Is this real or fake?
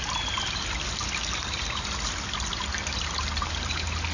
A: real